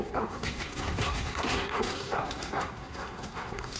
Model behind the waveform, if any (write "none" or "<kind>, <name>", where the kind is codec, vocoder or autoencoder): codec, SNAC